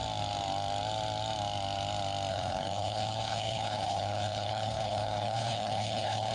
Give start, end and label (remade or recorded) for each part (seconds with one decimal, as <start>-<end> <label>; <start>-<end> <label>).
0.0-2.3 recorded; 2.3-6.3 remade